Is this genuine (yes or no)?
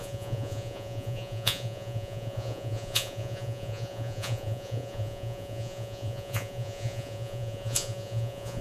no